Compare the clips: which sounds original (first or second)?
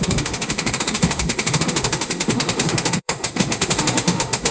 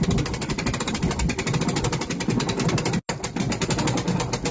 second